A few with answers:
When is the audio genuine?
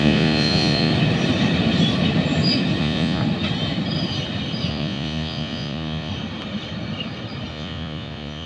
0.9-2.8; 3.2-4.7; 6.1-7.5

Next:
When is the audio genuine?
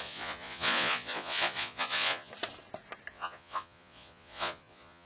2.3-3.1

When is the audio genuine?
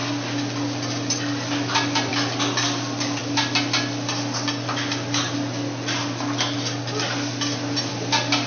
0.0-8.5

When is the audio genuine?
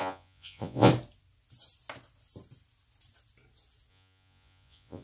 0.9-3.9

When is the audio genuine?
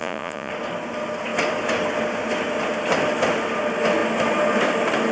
0.5-5.1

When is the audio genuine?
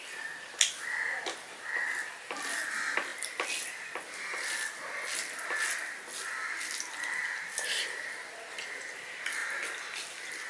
0.0-10.5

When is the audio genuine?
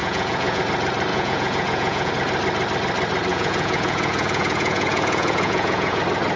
0.6-1.1; 2.1-3.3; 6.0-6.4